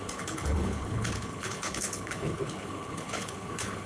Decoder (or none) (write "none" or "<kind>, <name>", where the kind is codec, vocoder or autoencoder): codec, HILCodec